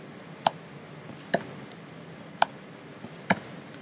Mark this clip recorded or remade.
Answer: recorded